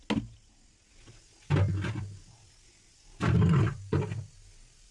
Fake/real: real